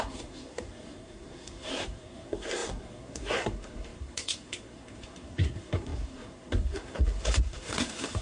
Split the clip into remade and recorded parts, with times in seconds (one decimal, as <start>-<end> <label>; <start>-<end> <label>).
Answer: 0.0-8.2 remade